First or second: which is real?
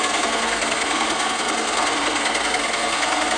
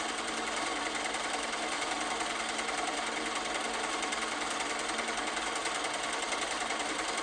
second